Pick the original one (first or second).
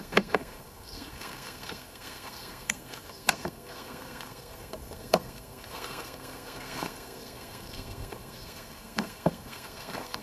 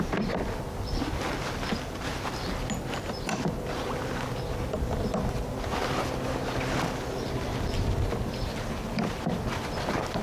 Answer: second